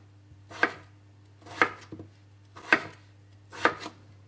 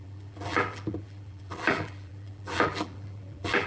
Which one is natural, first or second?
first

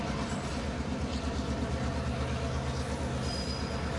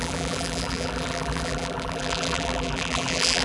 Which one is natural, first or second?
first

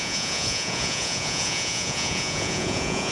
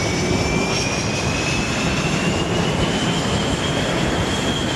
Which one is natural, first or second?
second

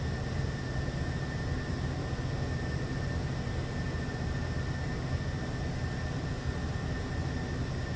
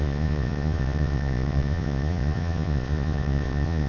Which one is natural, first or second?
first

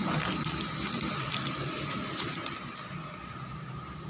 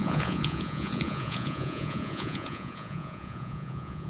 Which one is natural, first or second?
first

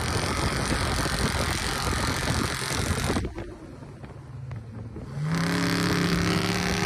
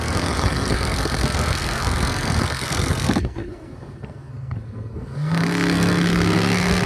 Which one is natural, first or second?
first